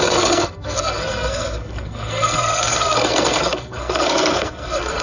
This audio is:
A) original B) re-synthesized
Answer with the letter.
B